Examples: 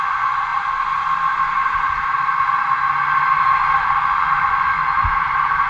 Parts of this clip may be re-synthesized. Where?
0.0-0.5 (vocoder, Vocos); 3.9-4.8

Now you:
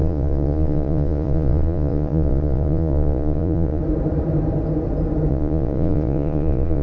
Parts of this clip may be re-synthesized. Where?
0.0-3.8 (vocoder, Vocos); 5.3-6.8

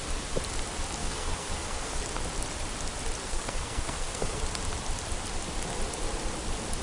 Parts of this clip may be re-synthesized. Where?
1.0-2.0 (codec, SNAC); 3.2-4.4